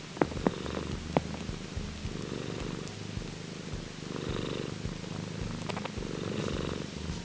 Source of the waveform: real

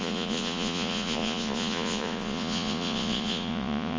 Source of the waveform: fake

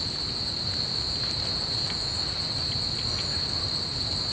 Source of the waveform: real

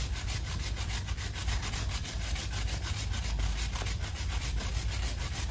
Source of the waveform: real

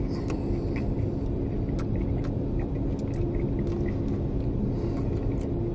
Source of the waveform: real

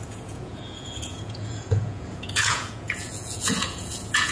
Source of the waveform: fake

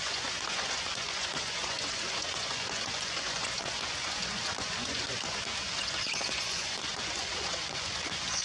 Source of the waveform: fake